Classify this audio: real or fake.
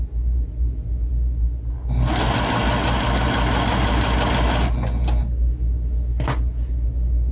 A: real